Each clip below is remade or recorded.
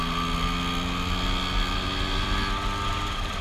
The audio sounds recorded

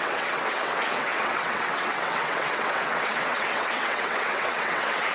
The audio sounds remade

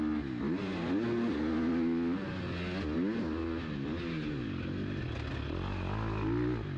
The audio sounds recorded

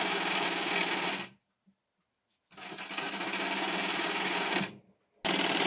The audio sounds recorded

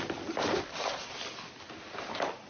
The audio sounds recorded